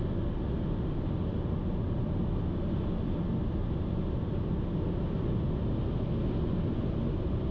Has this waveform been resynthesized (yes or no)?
no